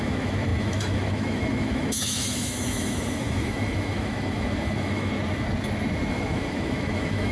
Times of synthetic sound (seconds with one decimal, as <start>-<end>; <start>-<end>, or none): 0.0-5.1; 6.1-7.3